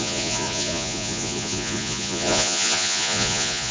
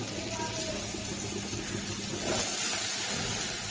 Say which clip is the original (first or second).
second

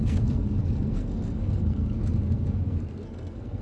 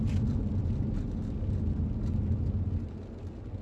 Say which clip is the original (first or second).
second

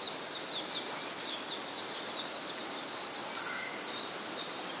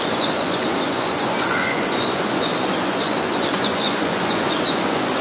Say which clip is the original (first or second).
first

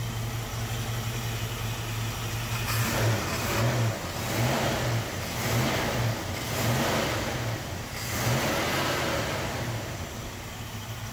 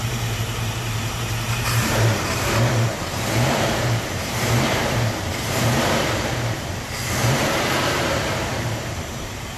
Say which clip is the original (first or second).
first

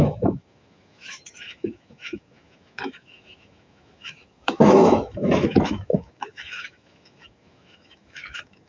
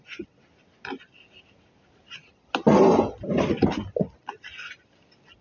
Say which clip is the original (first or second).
second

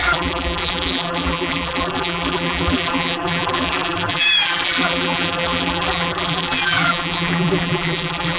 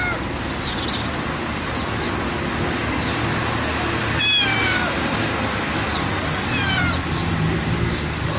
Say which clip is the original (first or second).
second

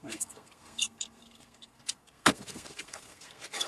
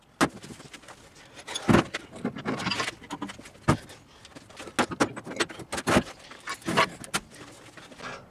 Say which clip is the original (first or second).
second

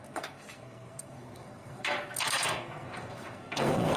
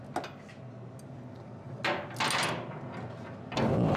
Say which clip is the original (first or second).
second